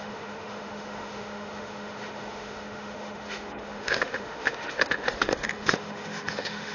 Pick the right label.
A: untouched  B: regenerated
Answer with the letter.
B